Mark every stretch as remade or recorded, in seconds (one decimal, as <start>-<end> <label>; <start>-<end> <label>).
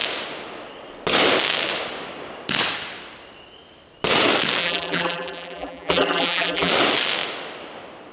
0.0-4.6 recorded; 4.6-6.7 remade; 6.7-8.1 recorded